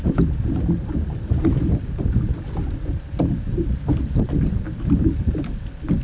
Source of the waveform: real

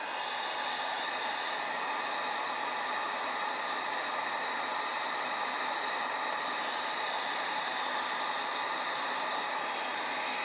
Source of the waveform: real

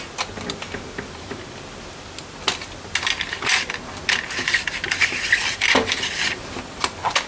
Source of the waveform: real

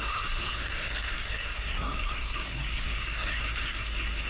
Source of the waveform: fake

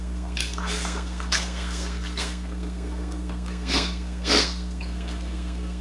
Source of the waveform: fake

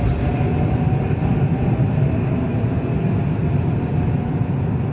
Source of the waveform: real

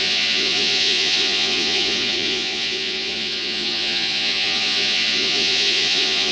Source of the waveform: fake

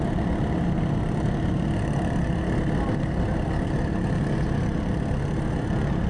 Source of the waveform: real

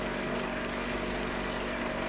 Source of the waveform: fake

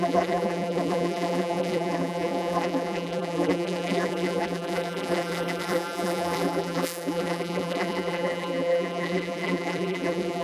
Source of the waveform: fake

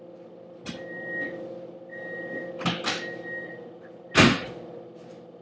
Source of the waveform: real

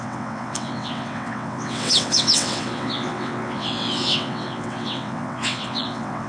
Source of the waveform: fake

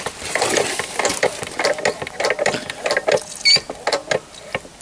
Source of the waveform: real